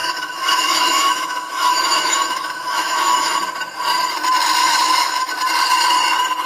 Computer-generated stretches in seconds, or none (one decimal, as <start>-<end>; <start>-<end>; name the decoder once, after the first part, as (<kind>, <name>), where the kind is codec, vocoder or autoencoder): 0.0-3.4 (autoencoder, DAC-VAE); 4.6-5.3